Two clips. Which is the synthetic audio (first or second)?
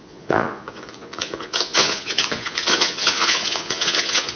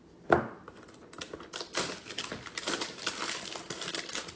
first